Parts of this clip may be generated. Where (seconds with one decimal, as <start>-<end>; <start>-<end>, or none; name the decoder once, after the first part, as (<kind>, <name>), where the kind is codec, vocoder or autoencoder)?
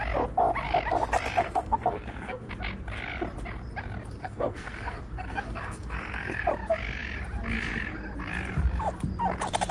1.4-2.5 (codec, SNAC); 4.2-6.4